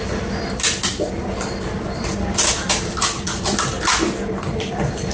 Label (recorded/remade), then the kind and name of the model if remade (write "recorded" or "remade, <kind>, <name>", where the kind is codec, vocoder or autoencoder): recorded